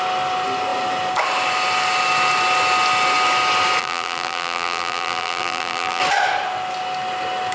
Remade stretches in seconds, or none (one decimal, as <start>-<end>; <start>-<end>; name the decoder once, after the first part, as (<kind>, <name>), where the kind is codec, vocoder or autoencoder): 3.8-6.0 (vocoder, BigVGAN v2)